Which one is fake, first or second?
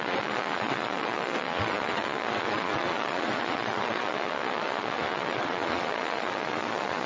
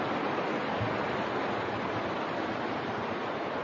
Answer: first